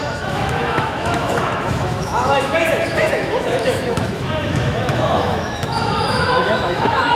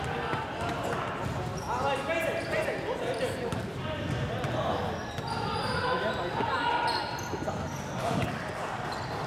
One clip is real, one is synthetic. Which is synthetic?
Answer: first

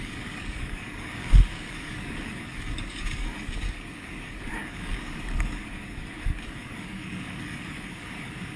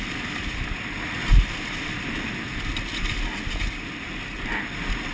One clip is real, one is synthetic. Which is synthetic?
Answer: first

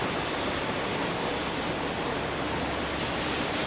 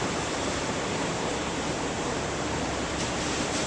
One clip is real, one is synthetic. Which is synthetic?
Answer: second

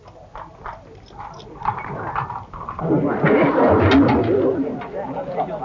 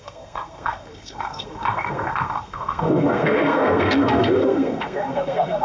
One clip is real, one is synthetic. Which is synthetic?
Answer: second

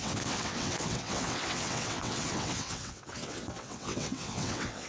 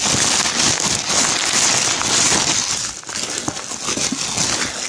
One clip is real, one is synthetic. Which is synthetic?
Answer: first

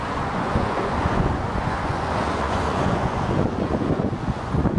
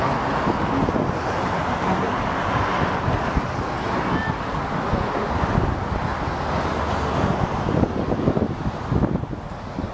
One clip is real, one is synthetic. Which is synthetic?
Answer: first